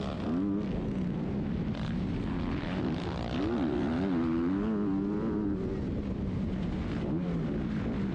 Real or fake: real